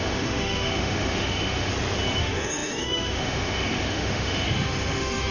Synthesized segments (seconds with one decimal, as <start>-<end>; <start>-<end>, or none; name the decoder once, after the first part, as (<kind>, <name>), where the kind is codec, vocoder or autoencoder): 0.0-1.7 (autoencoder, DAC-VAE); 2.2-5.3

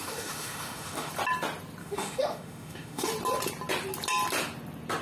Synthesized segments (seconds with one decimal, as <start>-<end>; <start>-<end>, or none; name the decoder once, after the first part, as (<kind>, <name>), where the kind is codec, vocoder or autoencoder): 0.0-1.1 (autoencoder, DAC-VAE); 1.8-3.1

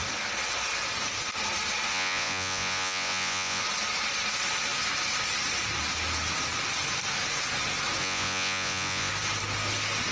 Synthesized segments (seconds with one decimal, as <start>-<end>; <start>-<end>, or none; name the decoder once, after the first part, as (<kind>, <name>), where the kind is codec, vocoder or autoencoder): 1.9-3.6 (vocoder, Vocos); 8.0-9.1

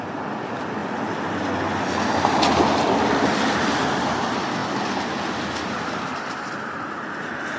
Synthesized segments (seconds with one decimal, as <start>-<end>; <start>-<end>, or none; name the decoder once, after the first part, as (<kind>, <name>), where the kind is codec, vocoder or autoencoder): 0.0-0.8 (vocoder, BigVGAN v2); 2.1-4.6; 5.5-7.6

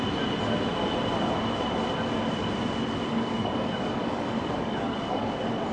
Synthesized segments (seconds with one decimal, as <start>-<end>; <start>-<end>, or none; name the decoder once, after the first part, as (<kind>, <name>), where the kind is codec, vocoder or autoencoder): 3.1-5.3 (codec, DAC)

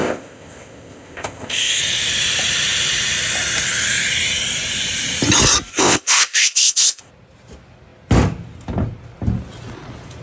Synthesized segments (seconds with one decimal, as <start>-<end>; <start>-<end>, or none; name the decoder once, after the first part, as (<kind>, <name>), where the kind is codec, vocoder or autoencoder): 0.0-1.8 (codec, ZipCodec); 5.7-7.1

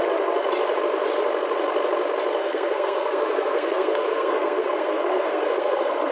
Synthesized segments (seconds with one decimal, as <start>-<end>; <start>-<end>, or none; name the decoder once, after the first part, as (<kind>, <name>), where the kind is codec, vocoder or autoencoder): 2.4-6.1 (codec, SNAC)

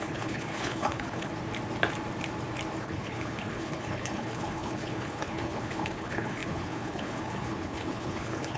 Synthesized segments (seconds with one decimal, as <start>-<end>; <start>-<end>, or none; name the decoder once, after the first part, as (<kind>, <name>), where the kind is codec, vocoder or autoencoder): 0.0-1.3 (codec, HILCodec); 2.8-8.6